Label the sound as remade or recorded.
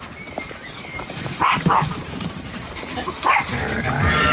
remade